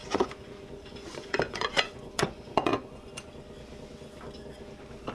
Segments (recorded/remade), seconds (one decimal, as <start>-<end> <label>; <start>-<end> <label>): 0.0-3.1 remade; 3.1-5.1 recorded